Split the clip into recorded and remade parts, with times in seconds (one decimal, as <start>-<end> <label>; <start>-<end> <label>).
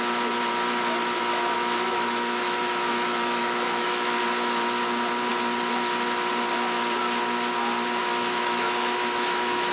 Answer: 0.0-1.3 recorded; 1.3-4.2 remade; 4.2-8.0 recorded; 8.0-9.7 remade